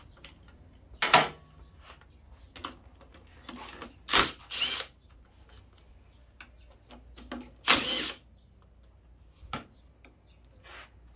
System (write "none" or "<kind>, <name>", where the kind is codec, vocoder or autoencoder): none